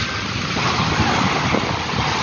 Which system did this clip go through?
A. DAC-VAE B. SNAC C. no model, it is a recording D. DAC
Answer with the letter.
C